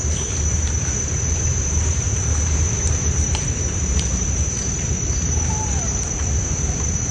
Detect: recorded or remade remade